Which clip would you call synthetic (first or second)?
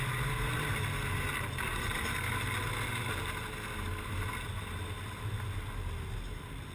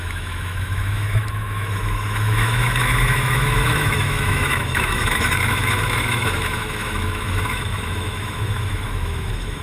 second